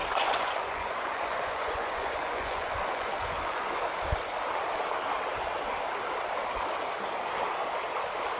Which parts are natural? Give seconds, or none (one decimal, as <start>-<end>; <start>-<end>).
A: 3.7-8.4